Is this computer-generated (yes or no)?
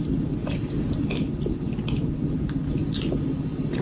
no